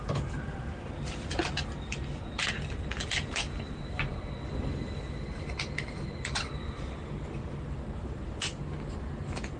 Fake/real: real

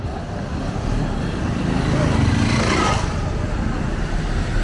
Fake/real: real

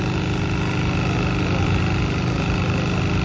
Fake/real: real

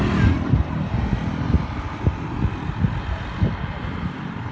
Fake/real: real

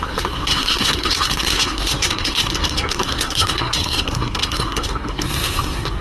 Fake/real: fake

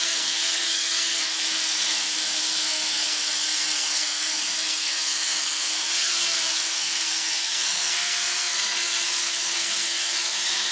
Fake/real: fake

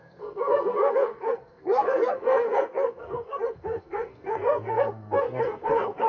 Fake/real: fake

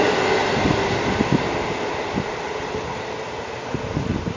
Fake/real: real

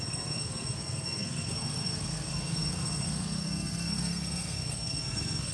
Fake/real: fake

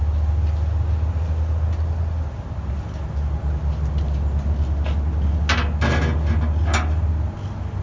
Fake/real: real